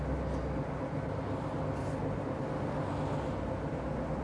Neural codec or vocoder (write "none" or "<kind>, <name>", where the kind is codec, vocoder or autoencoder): none